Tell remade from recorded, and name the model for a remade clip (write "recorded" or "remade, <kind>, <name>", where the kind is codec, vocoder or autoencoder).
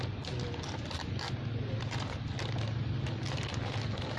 recorded